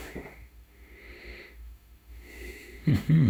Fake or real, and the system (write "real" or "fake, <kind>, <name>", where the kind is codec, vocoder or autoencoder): fake, autoencoder, DAC-VAE